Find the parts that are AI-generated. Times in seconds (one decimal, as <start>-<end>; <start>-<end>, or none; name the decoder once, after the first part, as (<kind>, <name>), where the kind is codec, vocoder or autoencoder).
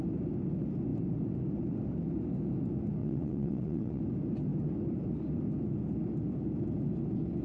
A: 3.0-4.0 (vocoder, Vocos)